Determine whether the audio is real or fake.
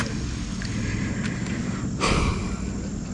real